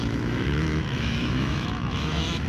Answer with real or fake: fake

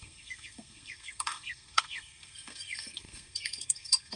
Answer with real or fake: fake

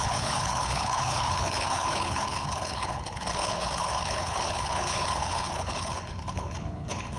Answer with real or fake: fake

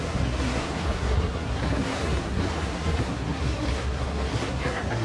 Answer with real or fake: fake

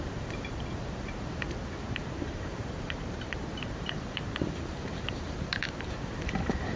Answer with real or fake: fake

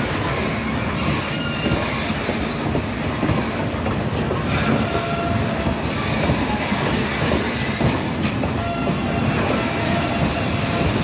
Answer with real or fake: real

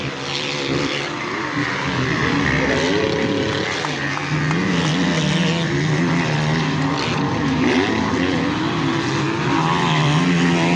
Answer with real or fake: real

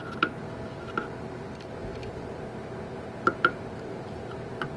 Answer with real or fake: real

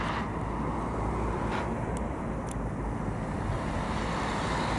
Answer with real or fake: fake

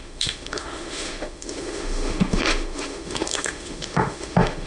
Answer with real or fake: fake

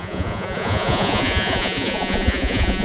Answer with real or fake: fake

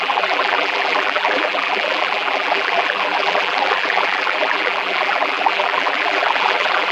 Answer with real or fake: fake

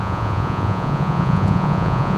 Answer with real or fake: fake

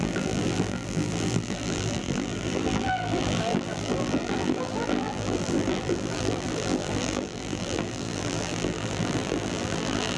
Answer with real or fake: fake